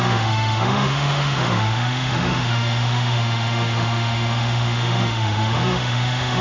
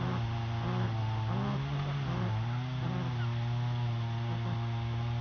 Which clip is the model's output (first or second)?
first